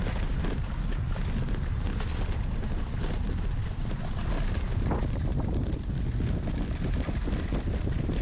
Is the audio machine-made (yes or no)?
no